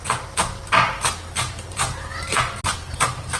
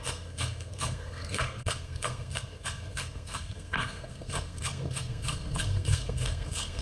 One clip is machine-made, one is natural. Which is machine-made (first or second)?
second